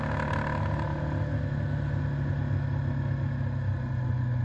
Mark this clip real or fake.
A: real